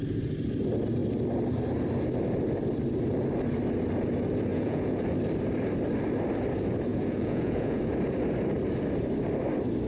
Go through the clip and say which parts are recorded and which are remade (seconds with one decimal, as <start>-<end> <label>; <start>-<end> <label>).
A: 0.0-4.5 recorded; 4.5-5.0 remade; 5.0-6.9 recorded; 6.9-7.8 remade; 7.8-9.9 recorded